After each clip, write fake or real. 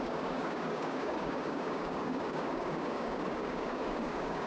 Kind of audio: fake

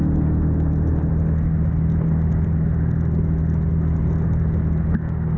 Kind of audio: real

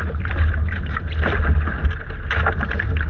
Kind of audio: real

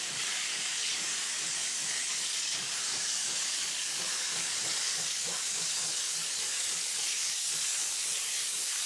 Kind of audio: fake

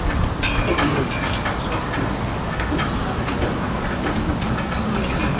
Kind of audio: real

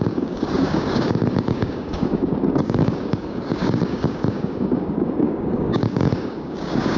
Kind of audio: fake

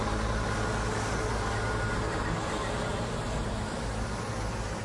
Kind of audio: real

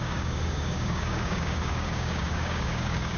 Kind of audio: fake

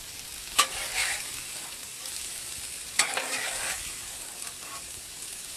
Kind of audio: fake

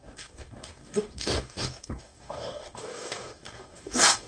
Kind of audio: fake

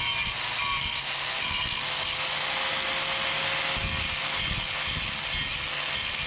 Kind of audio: real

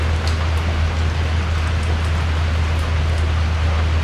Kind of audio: real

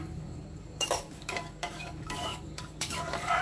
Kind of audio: fake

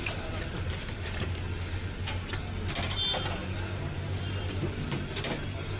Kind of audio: real